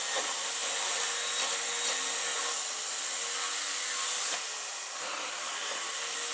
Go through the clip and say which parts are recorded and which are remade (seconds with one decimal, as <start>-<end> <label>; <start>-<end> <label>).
0.0-6.3 recorded